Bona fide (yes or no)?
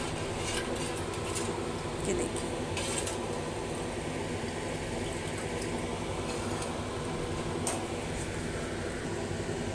yes